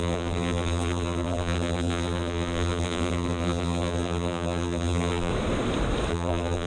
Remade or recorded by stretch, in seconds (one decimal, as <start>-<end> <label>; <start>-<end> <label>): 0.0-5.3 remade; 5.3-6.1 recorded; 6.1-6.7 remade